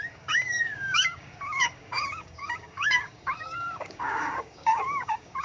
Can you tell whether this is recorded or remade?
remade